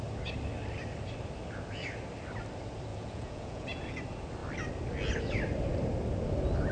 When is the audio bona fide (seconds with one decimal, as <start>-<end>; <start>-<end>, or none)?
0.0-2.9; 4.0-6.7